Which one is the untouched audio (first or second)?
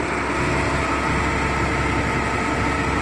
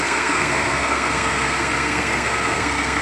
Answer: first